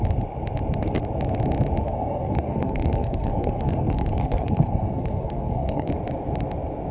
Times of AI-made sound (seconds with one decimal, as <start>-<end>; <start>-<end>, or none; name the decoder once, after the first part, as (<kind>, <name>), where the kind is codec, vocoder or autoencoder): 1.8-5.9 (codec, SNAC)